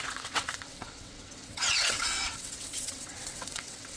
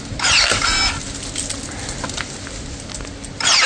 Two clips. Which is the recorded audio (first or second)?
second